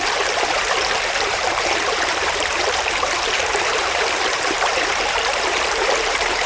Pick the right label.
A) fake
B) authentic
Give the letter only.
A